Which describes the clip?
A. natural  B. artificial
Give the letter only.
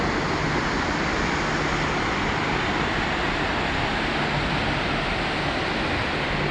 A